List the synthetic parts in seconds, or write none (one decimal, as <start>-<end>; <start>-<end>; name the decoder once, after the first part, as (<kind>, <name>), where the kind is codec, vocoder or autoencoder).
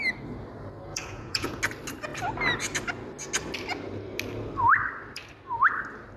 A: 0.9-1.6 (vocoder, Vocos)